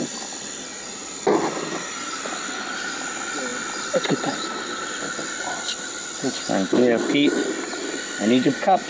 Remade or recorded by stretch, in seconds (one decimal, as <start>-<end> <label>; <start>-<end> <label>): 0.0-8.9 recorded